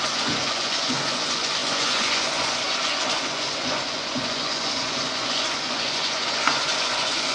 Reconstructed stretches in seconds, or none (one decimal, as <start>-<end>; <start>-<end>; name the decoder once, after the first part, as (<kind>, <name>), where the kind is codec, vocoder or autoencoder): 0.0-7.3 (vocoder, Vocos)